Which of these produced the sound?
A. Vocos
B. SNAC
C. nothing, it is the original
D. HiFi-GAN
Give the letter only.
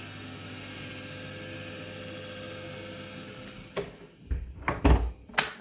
C